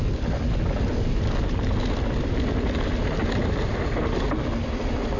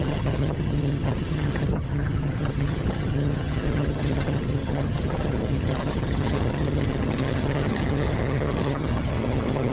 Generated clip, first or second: second